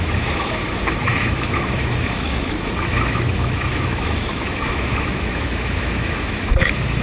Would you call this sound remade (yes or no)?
yes